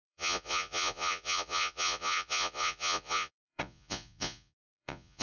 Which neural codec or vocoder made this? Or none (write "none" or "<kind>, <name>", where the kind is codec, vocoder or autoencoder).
vocoder, Vocos